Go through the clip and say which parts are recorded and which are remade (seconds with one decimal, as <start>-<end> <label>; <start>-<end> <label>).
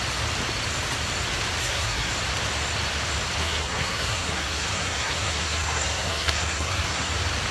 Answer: 0.0-1.6 recorded; 1.6-2.1 remade; 2.1-3.4 recorded; 3.4-7.1 remade; 7.1-7.5 recorded